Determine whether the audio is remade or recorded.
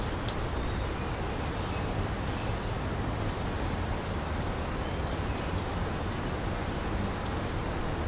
recorded